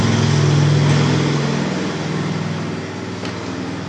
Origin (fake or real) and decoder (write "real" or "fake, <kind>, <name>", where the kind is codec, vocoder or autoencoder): real